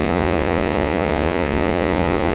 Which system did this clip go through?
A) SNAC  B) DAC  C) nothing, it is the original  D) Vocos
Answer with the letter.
D